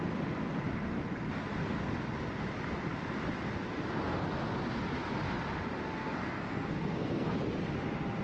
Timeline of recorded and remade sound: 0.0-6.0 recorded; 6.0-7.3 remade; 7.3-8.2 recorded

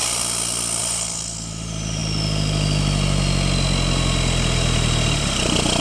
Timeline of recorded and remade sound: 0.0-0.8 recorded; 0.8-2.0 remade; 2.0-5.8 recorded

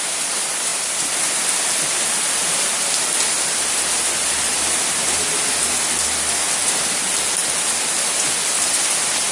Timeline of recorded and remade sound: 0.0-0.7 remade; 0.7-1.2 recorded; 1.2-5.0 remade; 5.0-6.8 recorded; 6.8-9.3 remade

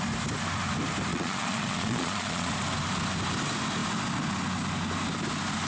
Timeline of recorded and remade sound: 0.0-1.1 recorded; 1.1-2.5 remade; 2.5-5.7 recorded

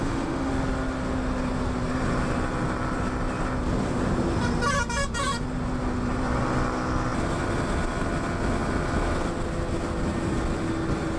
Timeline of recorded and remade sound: 0.0-0.5 remade; 0.5-11.2 recorded

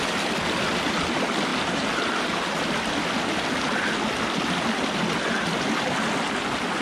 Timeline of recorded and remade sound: 0.0-6.8 recorded

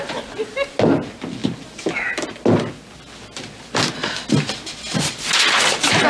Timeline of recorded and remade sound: 0.0-6.1 recorded

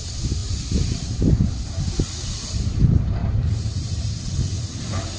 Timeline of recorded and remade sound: 0.0-0.4 recorded; 0.4-1.5 remade; 1.5-3.2 recorded; 3.2-4.1 remade; 4.1-5.2 recorded